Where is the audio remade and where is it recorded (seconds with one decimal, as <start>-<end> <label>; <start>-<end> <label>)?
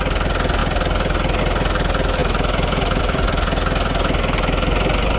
0.0-5.2 recorded